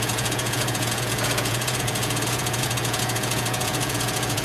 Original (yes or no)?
no